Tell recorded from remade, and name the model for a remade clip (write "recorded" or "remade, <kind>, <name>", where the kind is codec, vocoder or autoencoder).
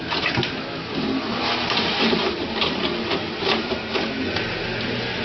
recorded